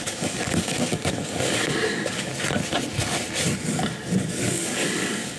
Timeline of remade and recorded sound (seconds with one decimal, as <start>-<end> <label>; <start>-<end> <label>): 0.0-2.3 remade; 2.3-4.2 recorded; 4.2-5.4 remade

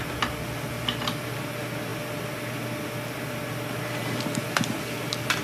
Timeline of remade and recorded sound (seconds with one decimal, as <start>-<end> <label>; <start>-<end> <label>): 0.0-5.4 recorded

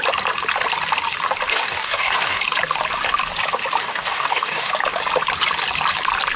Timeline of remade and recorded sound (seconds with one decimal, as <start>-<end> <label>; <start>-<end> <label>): 0.0-1.5 recorded; 1.5-2.4 remade; 2.4-3.8 recorded; 3.8-4.7 remade; 4.7-6.4 recorded